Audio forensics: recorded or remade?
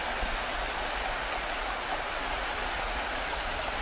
recorded